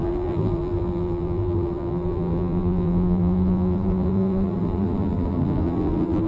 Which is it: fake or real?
fake